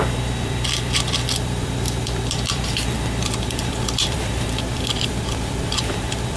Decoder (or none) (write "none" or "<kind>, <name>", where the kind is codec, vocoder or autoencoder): vocoder, BigVGAN v2